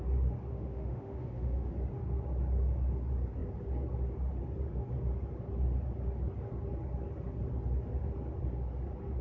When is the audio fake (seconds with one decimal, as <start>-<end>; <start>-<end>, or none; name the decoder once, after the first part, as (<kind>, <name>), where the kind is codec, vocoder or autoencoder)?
0.5-1.7 (autoencoder, DAC-VAE)